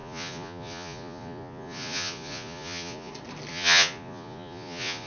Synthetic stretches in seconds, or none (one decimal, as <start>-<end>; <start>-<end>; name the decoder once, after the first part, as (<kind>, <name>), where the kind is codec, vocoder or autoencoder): 0.0-3.1 (vocoder, Vocos); 3.5-5.1